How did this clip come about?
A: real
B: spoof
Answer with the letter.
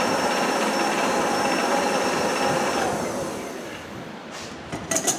B